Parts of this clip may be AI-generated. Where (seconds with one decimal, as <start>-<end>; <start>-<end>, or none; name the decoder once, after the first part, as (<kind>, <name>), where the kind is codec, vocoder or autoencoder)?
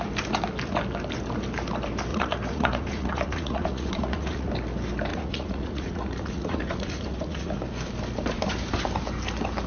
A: 2.1-4.5 (vocoder, Vocos); 5.1-7.6